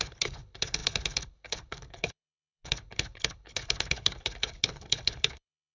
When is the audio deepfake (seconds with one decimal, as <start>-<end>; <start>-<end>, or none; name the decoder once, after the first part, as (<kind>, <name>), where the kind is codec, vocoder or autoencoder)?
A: 0.0-5.7 (codec, HILCodec)